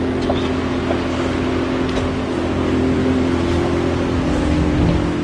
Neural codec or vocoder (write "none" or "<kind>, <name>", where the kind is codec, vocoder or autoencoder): none